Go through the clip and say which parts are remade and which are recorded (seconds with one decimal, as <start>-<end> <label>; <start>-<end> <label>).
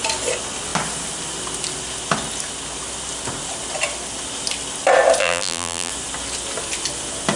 0.0-5.2 recorded; 5.2-5.9 remade; 5.9-7.4 recorded